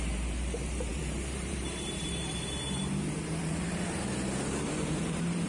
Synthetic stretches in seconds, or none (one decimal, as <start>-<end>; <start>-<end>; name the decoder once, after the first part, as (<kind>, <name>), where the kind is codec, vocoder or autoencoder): 0.0-2.8 (vocoder, BigVGAN v2); 3.4-5.5